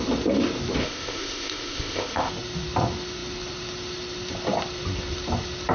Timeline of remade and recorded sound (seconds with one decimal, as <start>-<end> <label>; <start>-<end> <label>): 0.0-0.8 recorded; 0.8-2.3 remade; 2.3-5.7 recorded